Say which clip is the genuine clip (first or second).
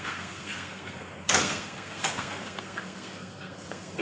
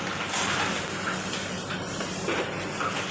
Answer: second